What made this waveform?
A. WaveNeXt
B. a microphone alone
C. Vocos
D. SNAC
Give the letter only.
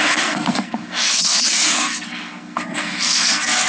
D